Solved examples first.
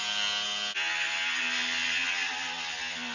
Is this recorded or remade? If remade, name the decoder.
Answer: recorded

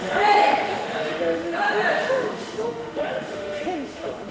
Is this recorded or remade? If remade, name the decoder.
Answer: remade, autoencoder, DAC-VAE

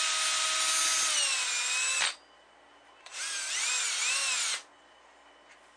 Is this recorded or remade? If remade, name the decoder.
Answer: recorded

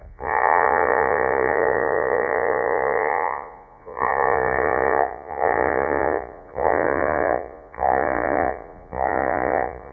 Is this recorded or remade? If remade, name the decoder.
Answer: remade, vocoder, Vocos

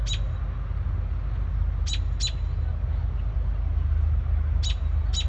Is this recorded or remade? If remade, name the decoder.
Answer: recorded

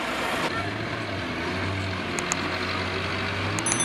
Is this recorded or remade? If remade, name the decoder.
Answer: recorded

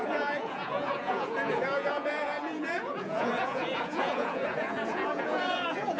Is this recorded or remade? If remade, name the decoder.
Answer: remade, vocoder, Vocos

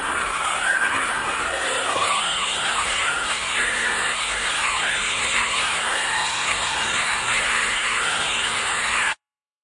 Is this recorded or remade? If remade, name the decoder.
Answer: remade, codec, SNAC